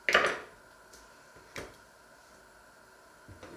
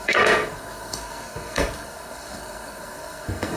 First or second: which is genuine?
first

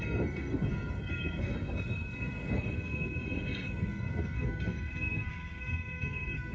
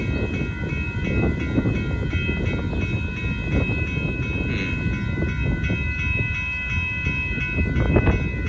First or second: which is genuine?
second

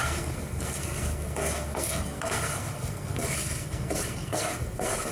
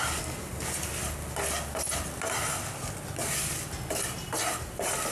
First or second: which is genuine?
second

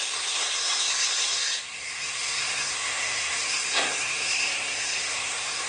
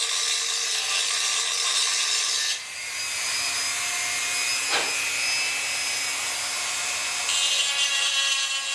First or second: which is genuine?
second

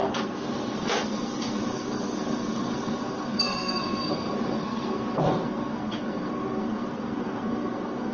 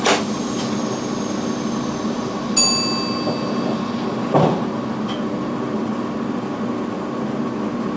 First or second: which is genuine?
second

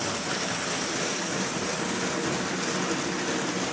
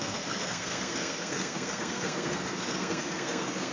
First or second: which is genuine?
first